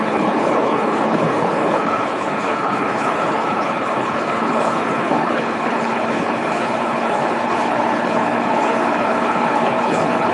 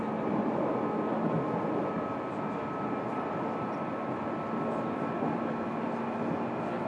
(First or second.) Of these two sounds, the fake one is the first